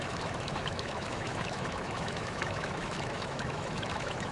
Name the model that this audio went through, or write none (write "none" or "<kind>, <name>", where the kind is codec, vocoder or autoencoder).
autoencoder, DAC-VAE